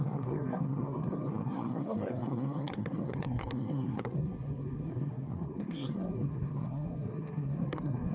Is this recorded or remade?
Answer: remade